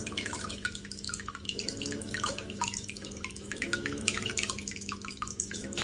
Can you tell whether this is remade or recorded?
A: remade